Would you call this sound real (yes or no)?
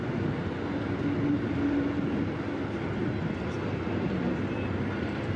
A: yes